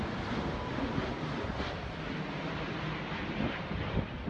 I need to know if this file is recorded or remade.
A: recorded